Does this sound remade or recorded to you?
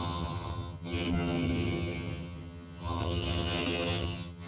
remade